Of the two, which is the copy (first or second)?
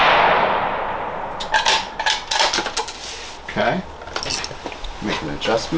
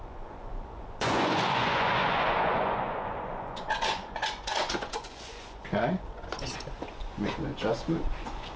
second